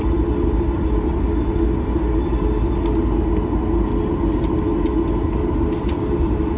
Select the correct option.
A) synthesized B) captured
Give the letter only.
B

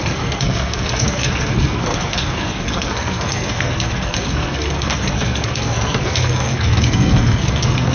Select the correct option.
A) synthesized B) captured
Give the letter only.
A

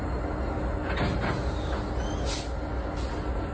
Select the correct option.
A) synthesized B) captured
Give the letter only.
B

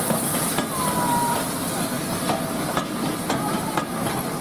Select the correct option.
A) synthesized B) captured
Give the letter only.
B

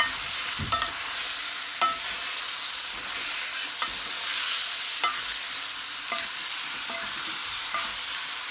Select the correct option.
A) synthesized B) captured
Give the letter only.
B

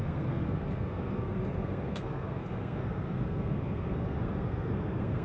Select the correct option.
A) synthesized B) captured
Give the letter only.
A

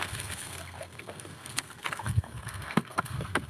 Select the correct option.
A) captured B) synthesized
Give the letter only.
B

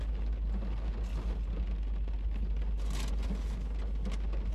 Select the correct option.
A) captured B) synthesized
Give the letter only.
A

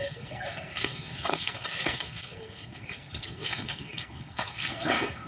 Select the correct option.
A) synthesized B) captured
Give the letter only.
A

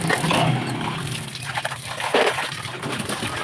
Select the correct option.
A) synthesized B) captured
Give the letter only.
B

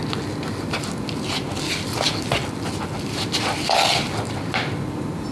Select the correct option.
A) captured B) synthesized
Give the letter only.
A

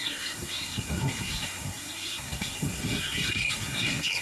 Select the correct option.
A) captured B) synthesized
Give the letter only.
B